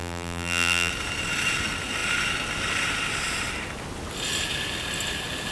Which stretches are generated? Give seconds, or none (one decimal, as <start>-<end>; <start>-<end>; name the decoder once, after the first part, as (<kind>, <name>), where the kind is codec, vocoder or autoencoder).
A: 0.0-0.9 (vocoder, BigVGAN v2)

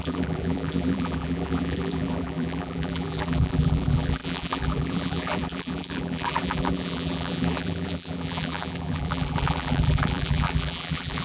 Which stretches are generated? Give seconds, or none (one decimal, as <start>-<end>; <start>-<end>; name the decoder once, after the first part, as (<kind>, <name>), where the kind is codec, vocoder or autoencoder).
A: 0.0-11.2 (vocoder, BigVGAN v2)